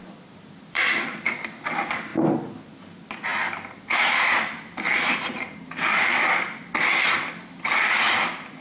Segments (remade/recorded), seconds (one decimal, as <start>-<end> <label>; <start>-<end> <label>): 0.0-3.3 remade; 3.3-7.3 recorded; 7.3-8.6 remade